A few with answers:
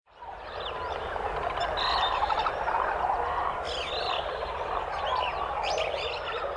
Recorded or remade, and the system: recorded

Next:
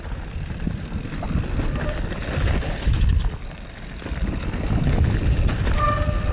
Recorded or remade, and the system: recorded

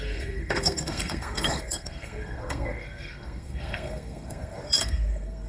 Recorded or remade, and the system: remade, codec, SNAC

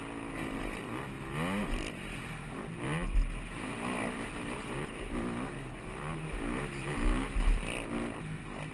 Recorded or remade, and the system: recorded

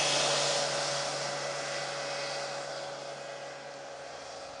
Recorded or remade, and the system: recorded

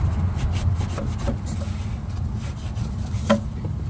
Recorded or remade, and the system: recorded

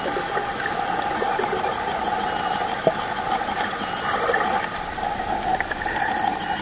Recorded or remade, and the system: recorded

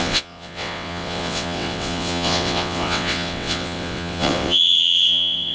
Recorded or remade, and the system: remade, vocoder, WaveNeXt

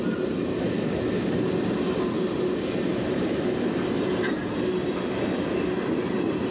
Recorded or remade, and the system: recorded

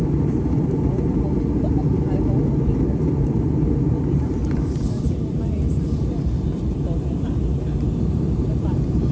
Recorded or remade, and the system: remade, vocoder, BigVGAN v2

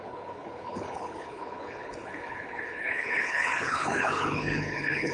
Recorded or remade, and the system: remade, codec, HILCodec